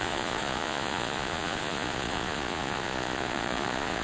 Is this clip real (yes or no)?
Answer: no